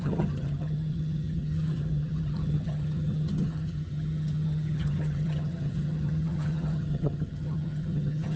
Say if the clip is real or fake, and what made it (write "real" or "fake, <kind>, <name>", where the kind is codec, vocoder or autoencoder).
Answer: fake, vocoder, HiFi-GAN